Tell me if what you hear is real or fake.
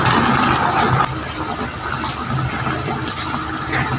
real